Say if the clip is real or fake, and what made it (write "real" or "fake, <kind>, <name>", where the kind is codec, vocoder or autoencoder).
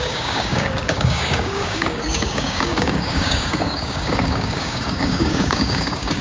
fake, codec, DAC